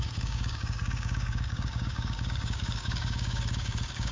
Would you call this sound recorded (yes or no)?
no